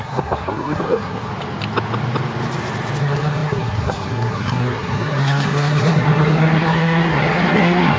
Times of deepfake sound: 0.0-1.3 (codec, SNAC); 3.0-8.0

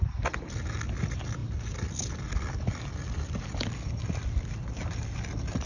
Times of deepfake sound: none

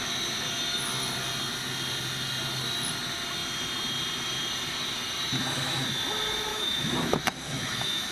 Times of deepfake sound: 6.5-8.1 (autoencoder, DAC-VAE)

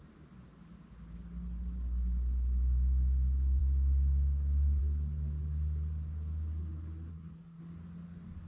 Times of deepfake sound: 7.1-7.6 (codec, SNAC)

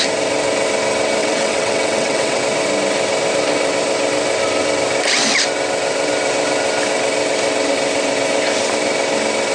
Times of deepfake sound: 1.2-2.4 (vocoder, WaveNeXt)

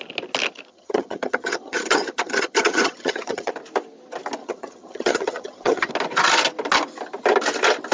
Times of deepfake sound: 0.7-3.5 (vocoder, HiFi-GAN); 4.4-5.9

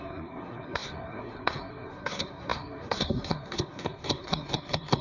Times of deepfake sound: 0.0-5.0 (codec, SNAC)

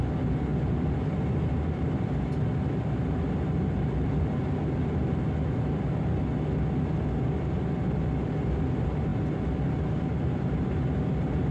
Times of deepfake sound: none